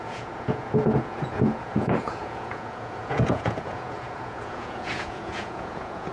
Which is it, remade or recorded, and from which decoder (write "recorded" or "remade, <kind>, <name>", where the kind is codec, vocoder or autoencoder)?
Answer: remade, vocoder, Vocos